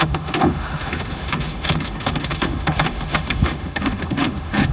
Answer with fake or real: fake